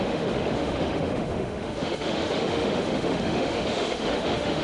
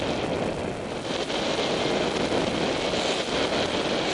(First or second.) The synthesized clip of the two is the first